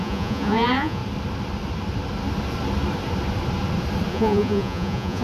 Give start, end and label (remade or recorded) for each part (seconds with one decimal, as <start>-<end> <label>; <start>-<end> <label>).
0.0-1.0 remade; 1.0-4.1 recorded; 4.1-5.2 remade